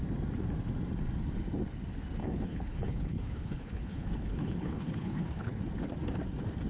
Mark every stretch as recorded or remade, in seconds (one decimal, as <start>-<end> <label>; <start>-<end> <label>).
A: 0.0-2.2 recorded; 2.2-5.6 remade; 5.6-6.7 recorded

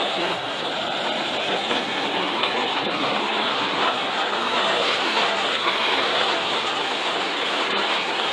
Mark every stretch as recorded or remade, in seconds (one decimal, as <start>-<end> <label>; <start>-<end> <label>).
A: 0.0-0.7 remade; 0.7-1.4 recorded; 1.4-8.3 remade

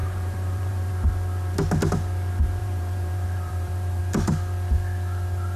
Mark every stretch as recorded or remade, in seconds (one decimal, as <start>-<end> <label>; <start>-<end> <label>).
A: 0.0-0.9 remade; 0.9-2.6 recorded; 2.6-4.0 remade; 4.0-5.6 recorded

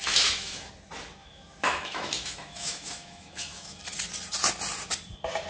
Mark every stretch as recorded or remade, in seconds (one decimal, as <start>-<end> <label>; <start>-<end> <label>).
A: 0.0-0.7 remade; 0.7-1.2 recorded; 1.2-3.8 remade; 3.8-5.5 recorded